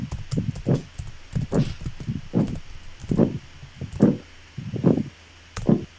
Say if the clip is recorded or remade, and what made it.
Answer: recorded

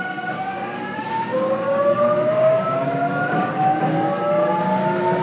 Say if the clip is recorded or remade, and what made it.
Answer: remade, codec, DAC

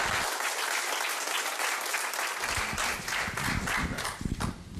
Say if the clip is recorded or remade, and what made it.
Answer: recorded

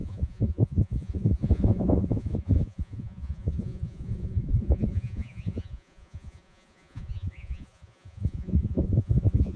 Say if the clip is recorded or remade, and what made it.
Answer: remade, vocoder, Vocos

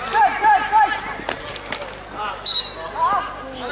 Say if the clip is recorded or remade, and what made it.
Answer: recorded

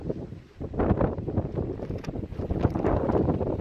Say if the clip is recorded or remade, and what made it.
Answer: recorded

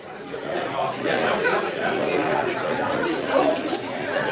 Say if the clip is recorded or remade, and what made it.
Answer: remade, vocoder, Vocos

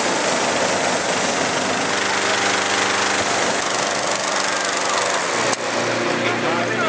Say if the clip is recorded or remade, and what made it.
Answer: recorded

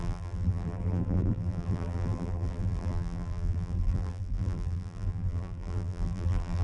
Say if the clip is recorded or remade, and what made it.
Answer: remade, vocoder, BigVGAN v2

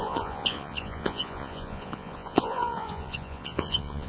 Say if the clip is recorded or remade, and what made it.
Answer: remade, vocoder, Vocos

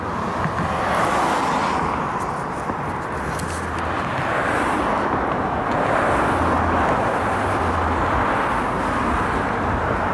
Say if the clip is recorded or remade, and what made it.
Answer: recorded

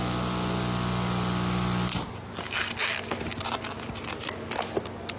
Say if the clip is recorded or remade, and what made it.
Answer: recorded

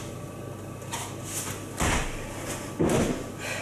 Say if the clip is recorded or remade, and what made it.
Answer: recorded